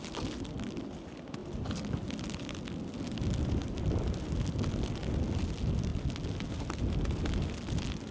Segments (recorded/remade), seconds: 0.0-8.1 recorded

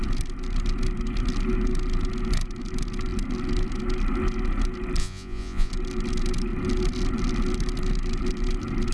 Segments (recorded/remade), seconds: 0.0-5.0 recorded; 5.0-5.7 remade; 5.7-8.9 recorded

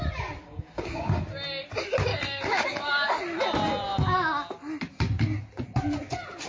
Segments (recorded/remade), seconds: 0.0-0.4 recorded; 0.4-1.2 remade; 1.2-2.1 recorded; 2.1-3.1 remade; 3.1-6.5 recorded

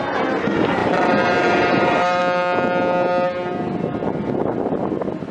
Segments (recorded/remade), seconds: 0.0-0.8 recorded; 0.8-2.2 remade; 2.2-5.3 recorded

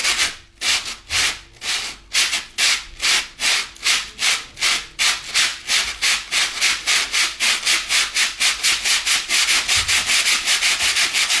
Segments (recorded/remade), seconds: 0.0-11.4 recorded

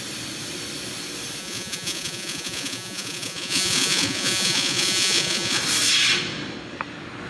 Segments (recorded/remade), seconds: 0.0-1.4 recorded; 1.4-5.6 remade; 5.6-7.3 recorded

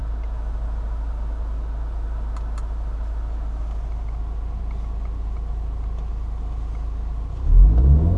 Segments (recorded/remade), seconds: 0.0-8.2 recorded

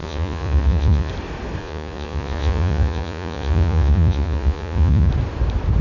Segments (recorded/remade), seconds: 0.0-1.1 remade; 1.1-1.6 recorded; 1.6-5.1 remade; 5.1-5.8 recorded